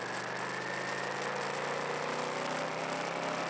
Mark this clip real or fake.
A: real